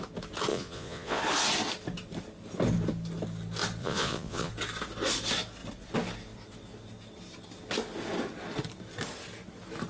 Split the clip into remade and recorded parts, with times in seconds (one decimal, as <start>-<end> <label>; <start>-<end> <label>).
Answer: 0.0-0.5 recorded; 0.5-1.2 remade; 1.2-3.8 recorded; 3.8-4.5 remade; 4.5-9.9 recorded